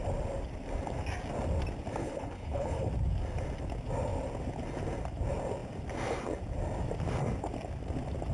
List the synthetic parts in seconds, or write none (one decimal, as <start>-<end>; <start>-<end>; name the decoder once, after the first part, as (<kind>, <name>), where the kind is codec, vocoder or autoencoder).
2.0-2.9 (codec, HILCodec)